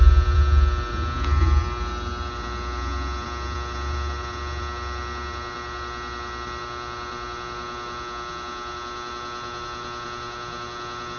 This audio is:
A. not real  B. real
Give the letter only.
B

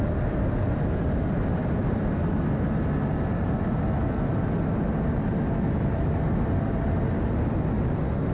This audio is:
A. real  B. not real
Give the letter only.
A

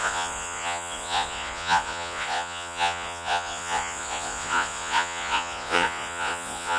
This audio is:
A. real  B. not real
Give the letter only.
B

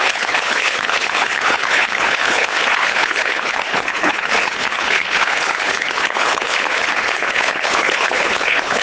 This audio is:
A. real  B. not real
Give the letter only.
B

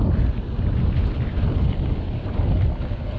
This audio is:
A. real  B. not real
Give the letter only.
A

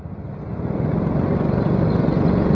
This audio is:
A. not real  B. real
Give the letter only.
B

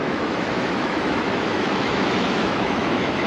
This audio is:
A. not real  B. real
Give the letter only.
A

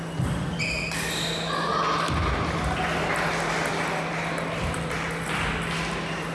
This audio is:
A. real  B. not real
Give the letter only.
A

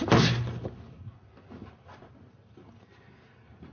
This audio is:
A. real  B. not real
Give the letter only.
A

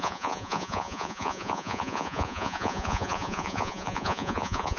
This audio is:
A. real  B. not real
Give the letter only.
B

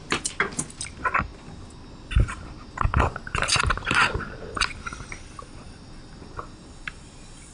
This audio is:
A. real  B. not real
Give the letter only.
A